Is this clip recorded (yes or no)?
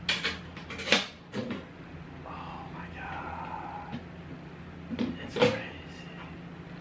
yes